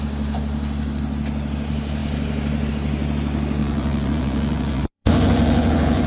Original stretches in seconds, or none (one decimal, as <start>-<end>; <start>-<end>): 0.0-3.6